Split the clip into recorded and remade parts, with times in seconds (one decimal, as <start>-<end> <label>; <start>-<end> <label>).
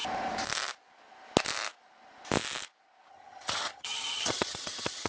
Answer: 0.0-3.1 recorded; 3.1-5.1 remade